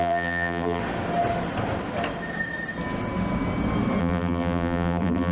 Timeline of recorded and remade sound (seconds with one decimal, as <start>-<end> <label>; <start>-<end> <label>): 0.0-0.8 remade; 0.8-4.0 recorded; 4.0-5.3 remade